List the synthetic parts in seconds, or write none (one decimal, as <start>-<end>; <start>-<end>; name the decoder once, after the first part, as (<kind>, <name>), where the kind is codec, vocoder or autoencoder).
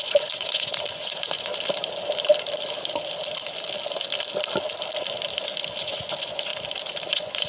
0.0-1.5 (vocoder, Vocos); 5.8-6.5; 7.1-7.5